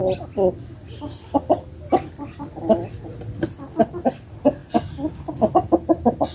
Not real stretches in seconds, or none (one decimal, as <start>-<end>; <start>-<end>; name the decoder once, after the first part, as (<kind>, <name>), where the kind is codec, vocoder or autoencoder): none